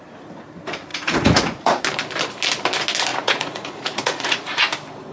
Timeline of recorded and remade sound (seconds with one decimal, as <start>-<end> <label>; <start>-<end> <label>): 0.0-0.9 recorded; 0.9-1.8 remade; 1.8-3.1 recorded; 3.1-4.6 remade; 4.6-5.1 recorded